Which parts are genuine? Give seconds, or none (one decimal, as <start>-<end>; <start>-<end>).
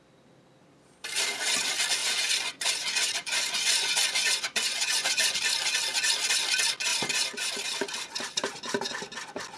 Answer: 0.0-2.0; 5.4-6.9; 7.5-9.6